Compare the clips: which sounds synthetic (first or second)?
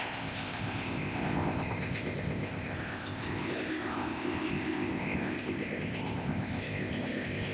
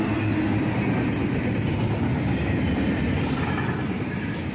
first